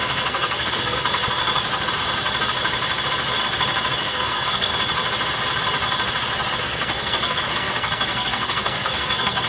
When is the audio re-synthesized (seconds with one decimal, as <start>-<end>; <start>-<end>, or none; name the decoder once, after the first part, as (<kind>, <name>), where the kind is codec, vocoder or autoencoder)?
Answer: 0.0-1.2 (codec, SNAC); 4.0-4.7; 6.6-9.5